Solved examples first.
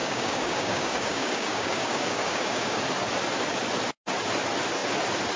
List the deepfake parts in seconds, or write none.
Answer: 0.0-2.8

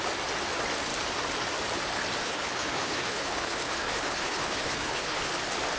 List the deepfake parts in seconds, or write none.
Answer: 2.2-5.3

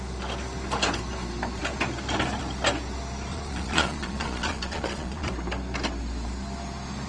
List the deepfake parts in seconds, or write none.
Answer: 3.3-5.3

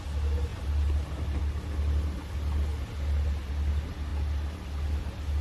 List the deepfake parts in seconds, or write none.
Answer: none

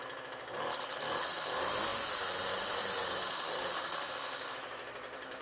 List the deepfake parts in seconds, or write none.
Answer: 0.0-1.9; 2.8-5.4